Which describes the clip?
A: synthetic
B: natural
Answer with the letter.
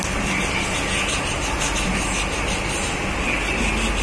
B